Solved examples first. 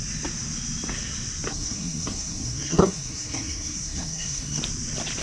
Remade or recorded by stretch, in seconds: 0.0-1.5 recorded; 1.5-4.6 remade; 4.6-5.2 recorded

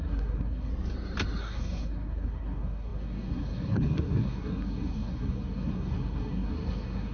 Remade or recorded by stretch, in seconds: 0.0-0.7 remade; 0.7-1.4 recorded; 1.4-7.1 remade

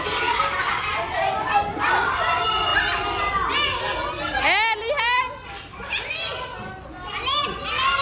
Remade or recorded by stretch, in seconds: 0.0-8.0 recorded

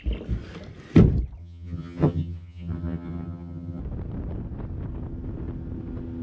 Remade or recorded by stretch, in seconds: 0.0-1.4 recorded; 1.4-3.8 remade; 3.8-6.2 recorded